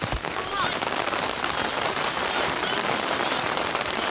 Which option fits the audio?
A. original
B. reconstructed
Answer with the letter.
B